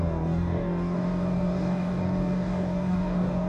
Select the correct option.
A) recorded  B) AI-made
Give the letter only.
B